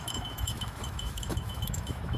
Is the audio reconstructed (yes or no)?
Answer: yes